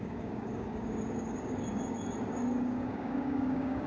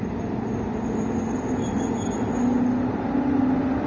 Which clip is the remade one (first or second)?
first